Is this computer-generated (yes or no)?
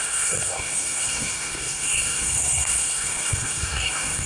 yes